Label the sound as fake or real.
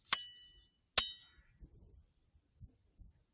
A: real